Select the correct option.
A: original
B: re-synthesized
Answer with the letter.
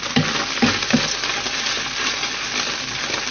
A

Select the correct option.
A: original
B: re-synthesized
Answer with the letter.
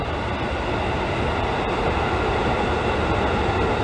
A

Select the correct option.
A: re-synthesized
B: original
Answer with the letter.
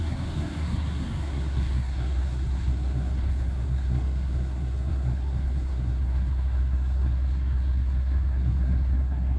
A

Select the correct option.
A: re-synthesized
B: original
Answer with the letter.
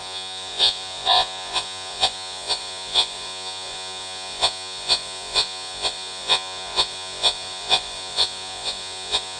A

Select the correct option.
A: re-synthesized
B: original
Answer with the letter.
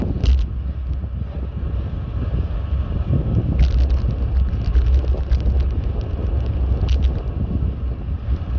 B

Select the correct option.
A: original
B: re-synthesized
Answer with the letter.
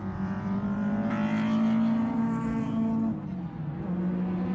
A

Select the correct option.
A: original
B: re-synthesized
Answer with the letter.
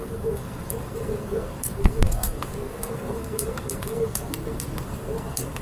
B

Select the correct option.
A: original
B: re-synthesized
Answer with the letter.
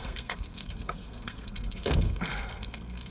B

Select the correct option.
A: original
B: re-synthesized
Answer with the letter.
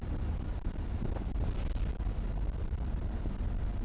A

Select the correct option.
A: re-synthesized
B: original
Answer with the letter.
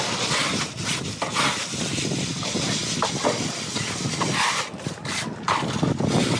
B